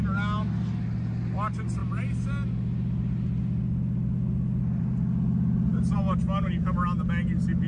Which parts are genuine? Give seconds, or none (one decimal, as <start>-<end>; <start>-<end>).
0.0-7.7